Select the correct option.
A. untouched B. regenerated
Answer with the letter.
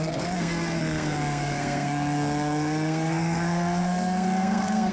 B